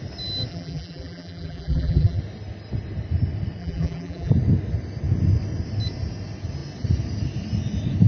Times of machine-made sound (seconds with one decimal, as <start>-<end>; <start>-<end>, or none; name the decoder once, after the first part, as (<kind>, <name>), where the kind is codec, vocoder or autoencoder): 0.5-2.2 (vocoder, BigVGAN v2); 3.6-4.3